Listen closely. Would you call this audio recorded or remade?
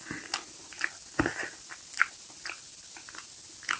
recorded